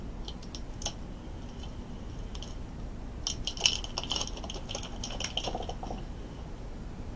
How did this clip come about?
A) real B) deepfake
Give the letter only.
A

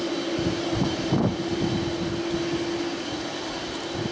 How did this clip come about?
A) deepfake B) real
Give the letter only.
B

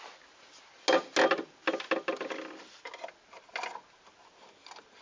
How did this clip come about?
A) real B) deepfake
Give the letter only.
A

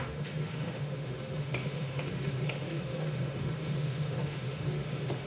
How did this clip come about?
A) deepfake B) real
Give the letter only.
A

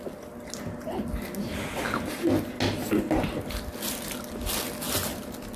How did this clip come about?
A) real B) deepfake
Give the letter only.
A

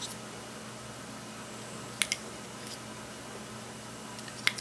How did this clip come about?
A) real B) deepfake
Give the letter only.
A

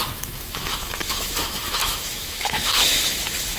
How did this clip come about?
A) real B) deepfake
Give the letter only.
B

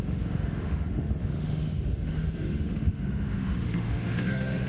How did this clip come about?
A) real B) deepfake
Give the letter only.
B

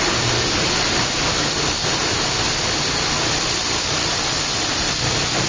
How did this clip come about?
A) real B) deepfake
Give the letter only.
A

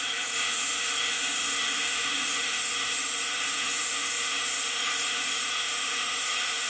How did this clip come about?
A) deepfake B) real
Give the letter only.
A